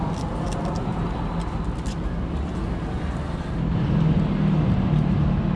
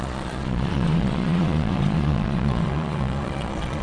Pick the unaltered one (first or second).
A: first